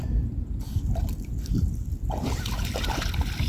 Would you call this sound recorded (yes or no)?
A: yes